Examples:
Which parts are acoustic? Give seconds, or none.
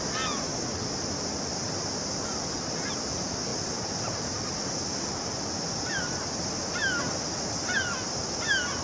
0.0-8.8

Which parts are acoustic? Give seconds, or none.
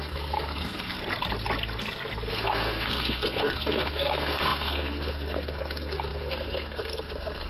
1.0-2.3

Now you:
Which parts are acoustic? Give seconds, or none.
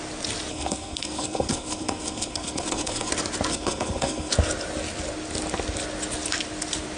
0.0-0.5; 3.1-3.5; 4.3-7.0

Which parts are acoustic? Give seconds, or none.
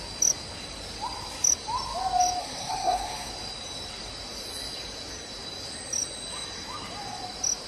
0.0-2.4; 3.3-7.7